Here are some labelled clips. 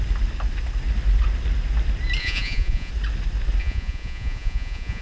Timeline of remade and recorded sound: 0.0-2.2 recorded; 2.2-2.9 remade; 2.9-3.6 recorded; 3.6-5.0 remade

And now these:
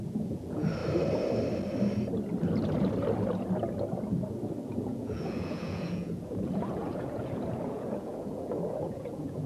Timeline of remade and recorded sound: 0.0-0.8 remade; 0.8-4.7 recorded; 4.7-9.5 remade